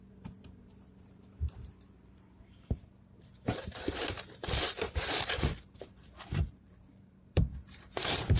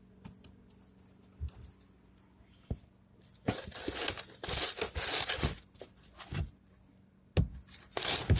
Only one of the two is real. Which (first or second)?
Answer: second